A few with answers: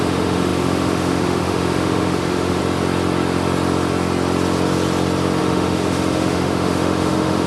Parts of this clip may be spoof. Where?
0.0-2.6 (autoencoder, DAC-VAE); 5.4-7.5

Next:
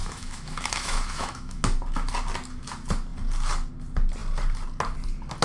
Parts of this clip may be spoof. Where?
0.0-1.6 (autoencoder, DAC-VAE)

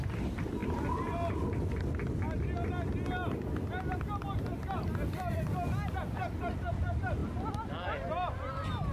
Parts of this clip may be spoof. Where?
none

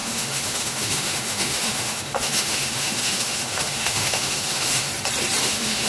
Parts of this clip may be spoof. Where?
0.0-4.9 (autoencoder, DAC-VAE); 5.4-5.9